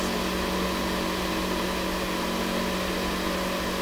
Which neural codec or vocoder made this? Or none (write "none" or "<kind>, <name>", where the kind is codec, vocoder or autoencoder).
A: none